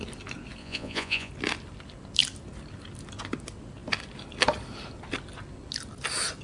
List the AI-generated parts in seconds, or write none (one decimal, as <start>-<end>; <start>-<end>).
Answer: 0.6-1.3